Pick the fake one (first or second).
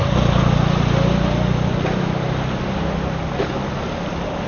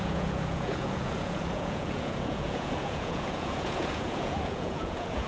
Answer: second